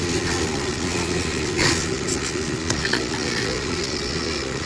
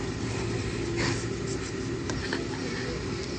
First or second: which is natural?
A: second